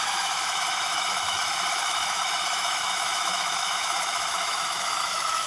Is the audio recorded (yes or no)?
no